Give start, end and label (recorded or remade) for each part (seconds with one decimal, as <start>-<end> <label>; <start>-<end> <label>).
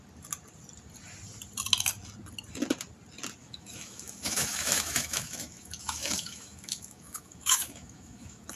0.0-3.4 recorded; 3.4-8.6 remade